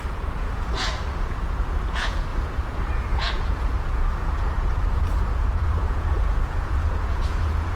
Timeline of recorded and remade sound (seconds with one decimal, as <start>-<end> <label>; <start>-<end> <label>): 0.0-7.8 remade